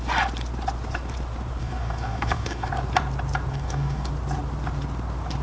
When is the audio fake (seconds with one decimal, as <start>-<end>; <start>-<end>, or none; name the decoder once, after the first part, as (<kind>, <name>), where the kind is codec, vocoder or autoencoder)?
1.6-2.7 (codec, DAC); 3.5-4.1